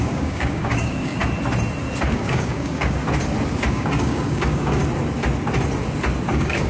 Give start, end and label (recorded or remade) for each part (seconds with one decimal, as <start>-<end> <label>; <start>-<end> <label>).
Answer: 0.0-1.2 remade; 1.2-2.1 recorded; 2.1-3.0 remade; 3.0-3.7 recorded; 3.7-4.8 remade; 4.8-6.3 recorded; 6.3-6.7 remade